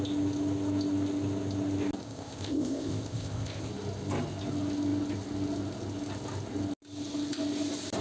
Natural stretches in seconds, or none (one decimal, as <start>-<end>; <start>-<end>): 0.0-2.0; 3.7-8.0